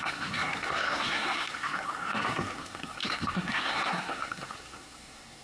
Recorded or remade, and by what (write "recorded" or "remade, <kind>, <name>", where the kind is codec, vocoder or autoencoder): remade, codec, SNAC